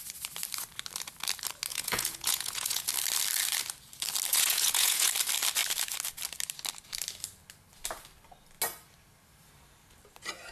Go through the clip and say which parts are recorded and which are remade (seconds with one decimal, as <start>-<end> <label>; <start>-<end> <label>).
0.0-1.7 recorded; 1.7-2.9 remade; 2.9-4.3 recorded; 4.3-5.1 remade; 5.1-10.5 recorded